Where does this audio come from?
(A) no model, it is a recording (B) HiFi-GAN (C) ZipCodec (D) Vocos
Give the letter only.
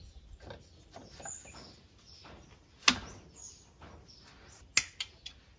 A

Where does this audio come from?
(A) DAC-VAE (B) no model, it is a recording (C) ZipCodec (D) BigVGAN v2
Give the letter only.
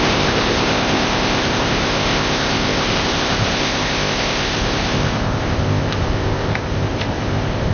C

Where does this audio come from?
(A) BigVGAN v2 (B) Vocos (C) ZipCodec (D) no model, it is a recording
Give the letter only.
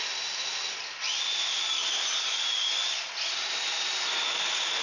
D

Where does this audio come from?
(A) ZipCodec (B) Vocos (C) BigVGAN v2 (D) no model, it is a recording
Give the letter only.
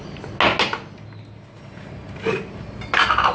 D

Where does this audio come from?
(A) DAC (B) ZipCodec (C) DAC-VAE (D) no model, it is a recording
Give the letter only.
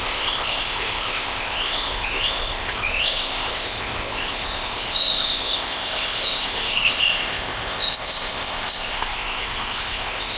B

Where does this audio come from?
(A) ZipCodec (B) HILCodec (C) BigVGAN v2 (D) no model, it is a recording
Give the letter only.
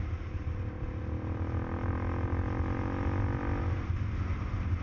D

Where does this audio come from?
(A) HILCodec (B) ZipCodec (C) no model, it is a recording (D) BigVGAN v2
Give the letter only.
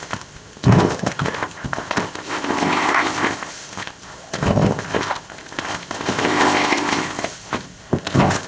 B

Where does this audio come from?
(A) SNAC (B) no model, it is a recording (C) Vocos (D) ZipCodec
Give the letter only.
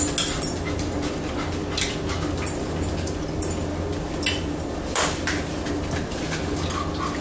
B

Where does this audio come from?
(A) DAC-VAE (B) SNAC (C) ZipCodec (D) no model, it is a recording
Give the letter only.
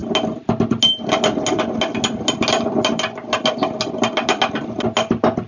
D